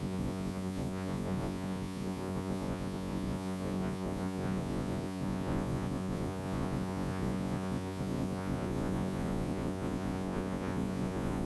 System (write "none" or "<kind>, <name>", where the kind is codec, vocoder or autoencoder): vocoder, Vocos